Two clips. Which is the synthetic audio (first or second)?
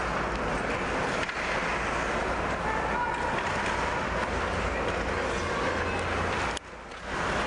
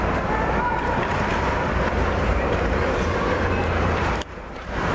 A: second